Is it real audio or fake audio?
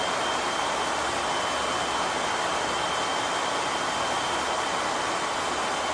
real